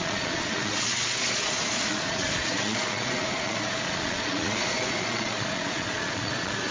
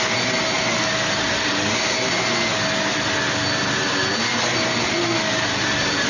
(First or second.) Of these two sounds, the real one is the second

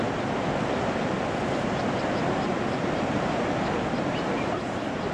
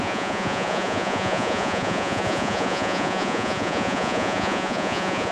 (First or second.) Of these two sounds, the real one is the first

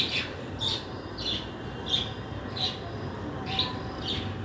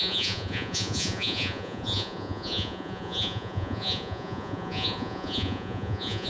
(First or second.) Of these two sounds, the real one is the first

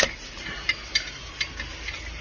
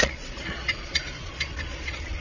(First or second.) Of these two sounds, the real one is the first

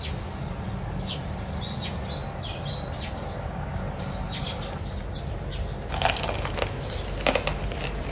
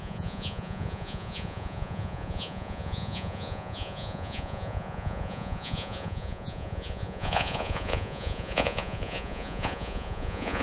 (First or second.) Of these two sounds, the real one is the first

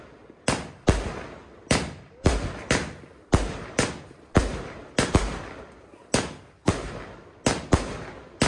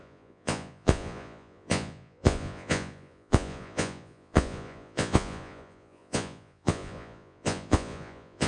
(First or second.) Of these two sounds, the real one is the first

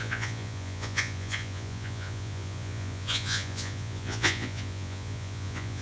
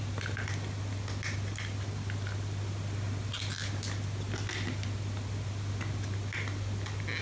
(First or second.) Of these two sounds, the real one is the second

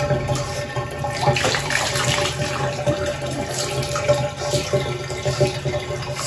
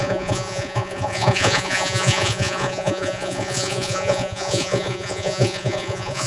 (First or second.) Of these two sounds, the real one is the first